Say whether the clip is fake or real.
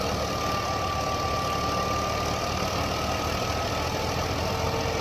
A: real